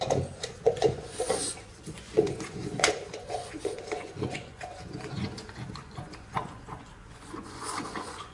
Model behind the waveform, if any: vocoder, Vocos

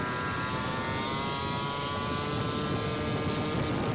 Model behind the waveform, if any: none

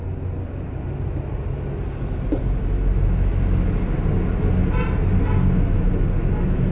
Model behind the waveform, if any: none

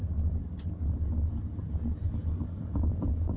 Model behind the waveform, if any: none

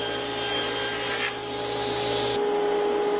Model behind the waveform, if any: none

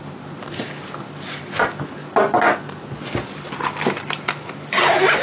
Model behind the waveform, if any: none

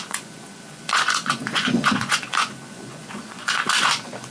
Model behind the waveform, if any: vocoder, Vocos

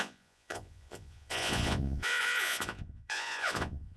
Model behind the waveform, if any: vocoder, Vocos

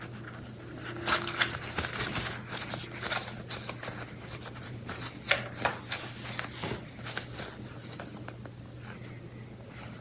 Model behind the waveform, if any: none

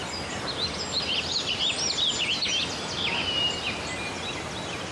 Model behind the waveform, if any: none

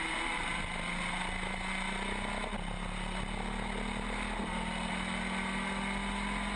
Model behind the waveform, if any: none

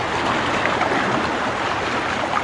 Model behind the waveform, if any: none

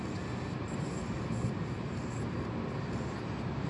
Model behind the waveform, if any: none